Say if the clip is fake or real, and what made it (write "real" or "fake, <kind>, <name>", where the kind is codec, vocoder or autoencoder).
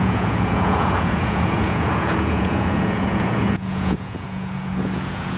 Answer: fake, vocoder, Vocos